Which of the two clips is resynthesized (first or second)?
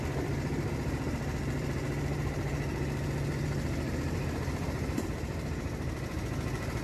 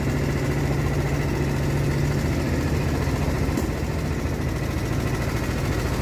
first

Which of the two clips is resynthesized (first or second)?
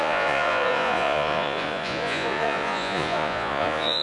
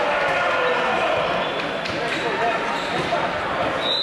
first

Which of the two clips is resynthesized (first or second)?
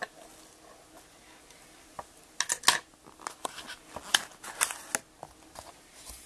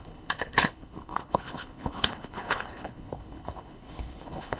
second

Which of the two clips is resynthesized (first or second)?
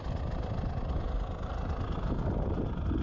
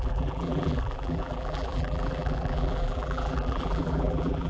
second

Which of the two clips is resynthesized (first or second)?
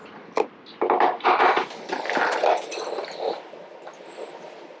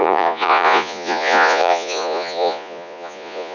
second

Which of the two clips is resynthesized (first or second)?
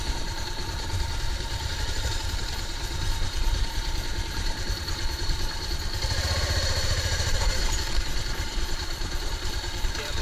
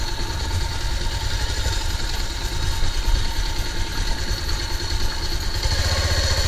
first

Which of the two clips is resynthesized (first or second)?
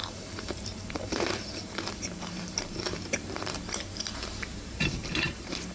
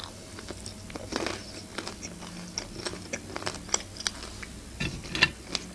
first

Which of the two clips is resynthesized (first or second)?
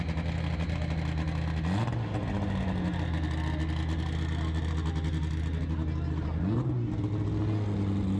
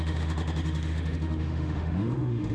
second